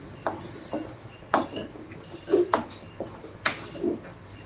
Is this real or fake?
real